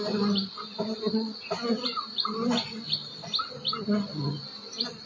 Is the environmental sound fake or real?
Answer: real